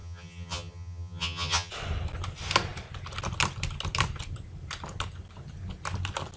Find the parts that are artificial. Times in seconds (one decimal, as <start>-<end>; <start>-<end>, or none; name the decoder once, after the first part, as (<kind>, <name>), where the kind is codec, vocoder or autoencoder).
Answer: 0.0-1.7 (vocoder, HiFi-GAN)